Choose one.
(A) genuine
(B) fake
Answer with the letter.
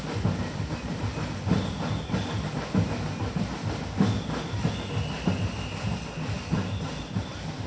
A